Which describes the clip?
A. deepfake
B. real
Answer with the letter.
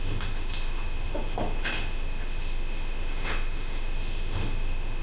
A